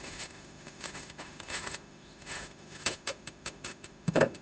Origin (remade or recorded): remade